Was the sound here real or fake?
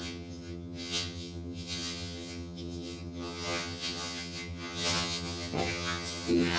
fake